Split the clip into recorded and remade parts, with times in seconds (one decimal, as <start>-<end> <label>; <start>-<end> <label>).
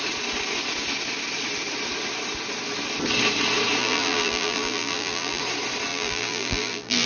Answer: 0.0-3.8 recorded; 3.8-5.4 remade; 5.4-5.9 recorded; 5.9-7.1 remade